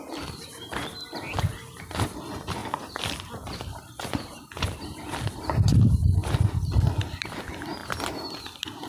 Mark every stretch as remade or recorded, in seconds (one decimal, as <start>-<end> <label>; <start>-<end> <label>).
0.0-2.6 remade; 2.6-3.3 recorded; 3.3-6.2 remade; 6.2-6.7 recorded; 6.7-7.8 remade; 7.8-8.4 recorded; 8.4-8.9 remade